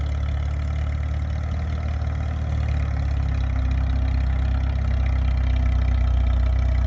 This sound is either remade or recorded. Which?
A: recorded